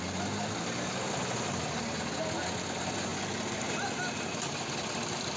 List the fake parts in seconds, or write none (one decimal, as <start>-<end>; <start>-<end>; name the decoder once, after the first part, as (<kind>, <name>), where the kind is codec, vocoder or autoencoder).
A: none